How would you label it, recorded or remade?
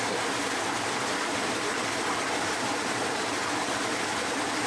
recorded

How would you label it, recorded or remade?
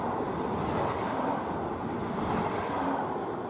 recorded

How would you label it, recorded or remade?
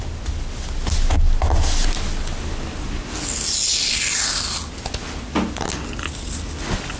recorded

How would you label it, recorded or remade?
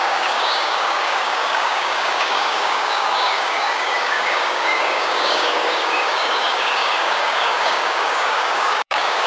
remade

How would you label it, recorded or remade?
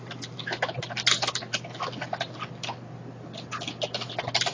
recorded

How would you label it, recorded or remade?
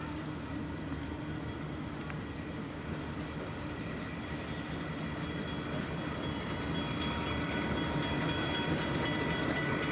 recorded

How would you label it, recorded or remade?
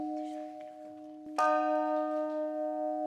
recorded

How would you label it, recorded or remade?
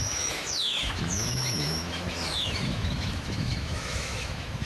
remade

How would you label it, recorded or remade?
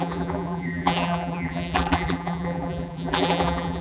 remade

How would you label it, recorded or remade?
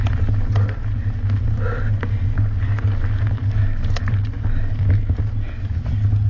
recorded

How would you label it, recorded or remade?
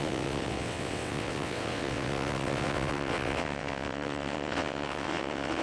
remade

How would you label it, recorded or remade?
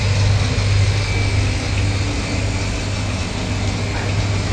recorded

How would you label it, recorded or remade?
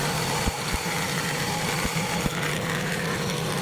remade